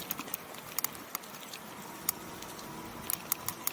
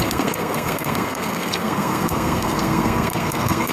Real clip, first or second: first